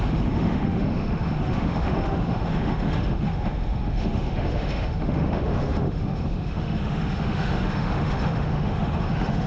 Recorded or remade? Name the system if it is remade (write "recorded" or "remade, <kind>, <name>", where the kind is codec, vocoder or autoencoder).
remade, autoencoder, DAC-VAE